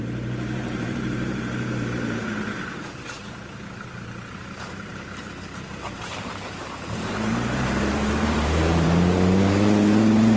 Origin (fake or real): fake